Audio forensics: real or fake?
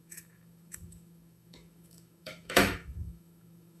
fake